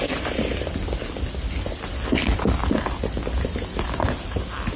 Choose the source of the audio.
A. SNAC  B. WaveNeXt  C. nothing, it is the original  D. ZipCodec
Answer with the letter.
C